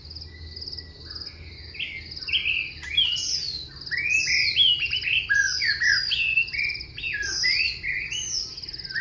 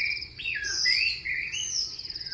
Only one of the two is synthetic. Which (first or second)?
second